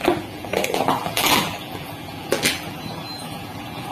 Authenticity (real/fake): fake